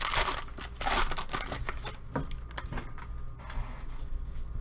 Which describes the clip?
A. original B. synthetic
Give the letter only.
A